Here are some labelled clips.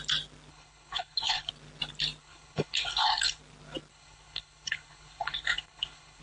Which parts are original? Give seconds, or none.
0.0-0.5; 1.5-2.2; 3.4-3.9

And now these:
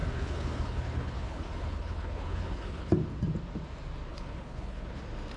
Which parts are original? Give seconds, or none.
2.9-4.1; 5.0-5.4